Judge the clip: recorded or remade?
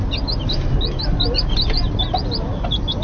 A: recorded